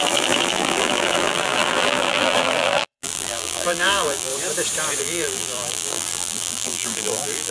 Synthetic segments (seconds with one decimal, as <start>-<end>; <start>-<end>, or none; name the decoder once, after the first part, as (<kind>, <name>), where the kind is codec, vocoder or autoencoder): 0.0-4.3 (vocoder, BigVGAN v2); 5.0-7.5